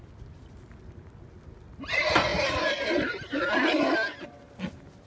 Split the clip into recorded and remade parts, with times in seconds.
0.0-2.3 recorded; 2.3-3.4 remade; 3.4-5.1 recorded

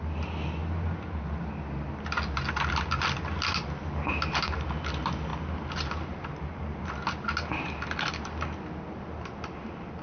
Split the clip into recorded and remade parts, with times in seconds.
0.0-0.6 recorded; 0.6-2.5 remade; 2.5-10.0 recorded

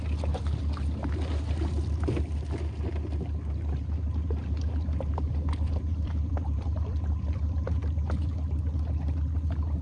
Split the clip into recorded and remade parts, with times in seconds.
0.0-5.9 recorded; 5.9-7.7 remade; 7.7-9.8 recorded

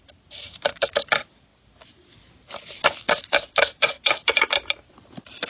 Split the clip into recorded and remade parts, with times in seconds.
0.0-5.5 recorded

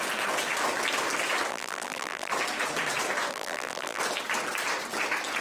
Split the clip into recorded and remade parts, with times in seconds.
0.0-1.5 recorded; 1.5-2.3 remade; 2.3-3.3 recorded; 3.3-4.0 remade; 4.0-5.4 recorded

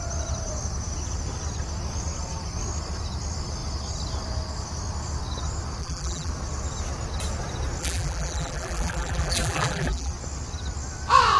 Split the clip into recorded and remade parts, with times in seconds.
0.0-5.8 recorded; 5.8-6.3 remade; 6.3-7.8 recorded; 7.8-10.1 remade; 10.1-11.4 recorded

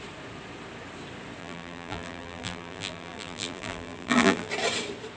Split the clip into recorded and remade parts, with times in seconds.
0.0-1.4 recorded; 1.4-4.5 remade; 4.5-5.2 recorded

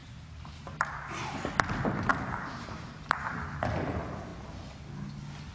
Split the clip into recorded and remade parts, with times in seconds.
0.0-1.5 remade; 1.5-2.1 recorded; 2.1-3.4 remade; 3.4-5.5 recorded